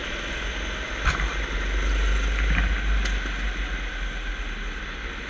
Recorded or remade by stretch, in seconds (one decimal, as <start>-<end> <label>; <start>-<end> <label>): 0.0-5.3 recorded